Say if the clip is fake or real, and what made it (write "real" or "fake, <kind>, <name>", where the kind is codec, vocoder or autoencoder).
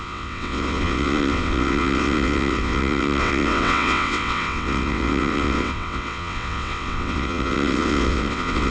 fake, vocoder, WaveNeXt